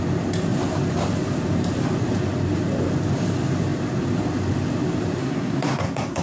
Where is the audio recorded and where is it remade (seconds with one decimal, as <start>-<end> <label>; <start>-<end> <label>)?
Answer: 0.0-5.2 recorded; 5.2-6.2 remade